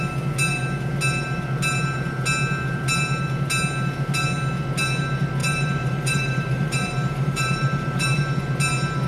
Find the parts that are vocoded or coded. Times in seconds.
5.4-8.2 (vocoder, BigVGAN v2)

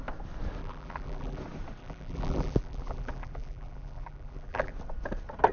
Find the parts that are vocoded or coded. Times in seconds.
0.6-1.4 (vocoder, BigVGAN v2); 1.8-4.7

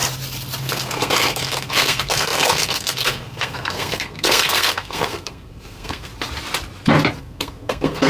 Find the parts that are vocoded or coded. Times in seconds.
0.6-6.1 (codec, SNAC); 7.2-8.1

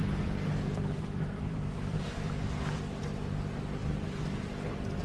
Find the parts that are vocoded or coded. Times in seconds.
0.0-3.0 (vocoder, BigVGAN v2); 3.8-5.0

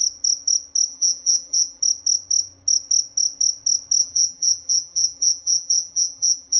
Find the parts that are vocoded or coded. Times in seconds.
0.9-1.8 (vocoder, BigVGAN v2); 4.0-6.6